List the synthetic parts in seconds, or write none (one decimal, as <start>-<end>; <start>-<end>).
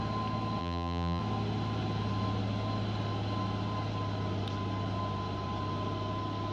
0.6-1.2